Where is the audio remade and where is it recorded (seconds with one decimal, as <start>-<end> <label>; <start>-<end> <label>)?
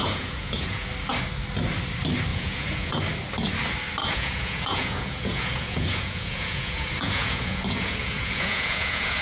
0.0-0.9 remade; 0.9-2.3 recorded; 2.3-3.0 remade; 3.0-4.0 recorded; 4.0-9.2 remade